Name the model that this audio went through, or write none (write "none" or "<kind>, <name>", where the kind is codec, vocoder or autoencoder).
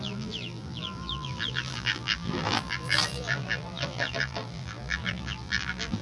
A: vocoder, BigVGAN v2